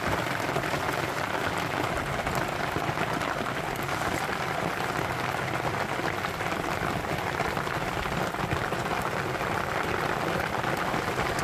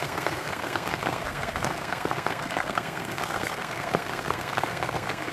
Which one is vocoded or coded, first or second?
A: second